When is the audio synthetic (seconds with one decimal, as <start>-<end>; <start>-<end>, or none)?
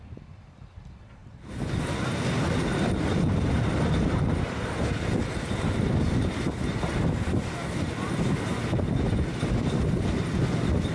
none